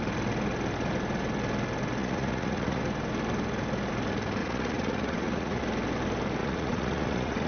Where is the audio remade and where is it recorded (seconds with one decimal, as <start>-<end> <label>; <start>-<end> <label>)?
0.0-2.0 recorded; 2.0-2.8 remade; 2.8-4.4 recorded; 4.4-5.6 remade; 5.6-6.4 recorded; 6.4-7.5 remade